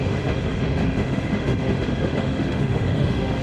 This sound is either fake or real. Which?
fake